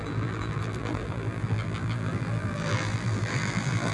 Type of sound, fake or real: fake